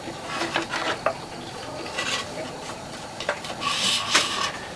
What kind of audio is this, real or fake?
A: real